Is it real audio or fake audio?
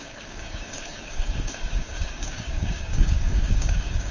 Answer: fake